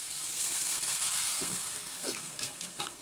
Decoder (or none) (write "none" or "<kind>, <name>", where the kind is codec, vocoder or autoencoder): codec, SNAC